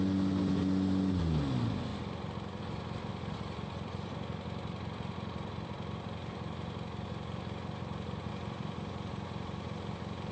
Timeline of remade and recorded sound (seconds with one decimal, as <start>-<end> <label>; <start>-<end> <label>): 0.0-3.1 recorded; 3.1-8.3 remade; 8.3-10.3 recorded